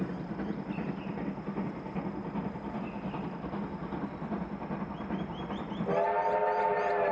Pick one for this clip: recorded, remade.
recorded